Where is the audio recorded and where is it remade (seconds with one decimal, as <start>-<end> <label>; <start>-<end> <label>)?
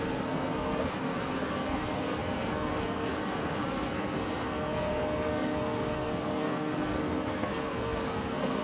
0.0-8.6 remade